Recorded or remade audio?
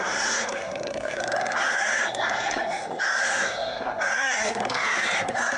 remade